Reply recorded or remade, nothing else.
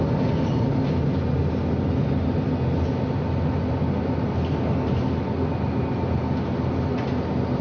recorded